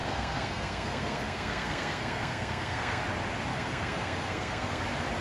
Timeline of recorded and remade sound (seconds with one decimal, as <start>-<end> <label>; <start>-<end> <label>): 0.0-3.0 remade; 3.0-3.5 recorded; 3.5-4.8 remade; 4.8-5.2 recorded